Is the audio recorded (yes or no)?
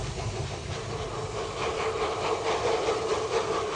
yes